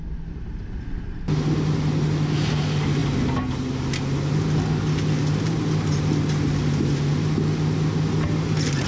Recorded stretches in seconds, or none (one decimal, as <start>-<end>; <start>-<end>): 0.0-8.9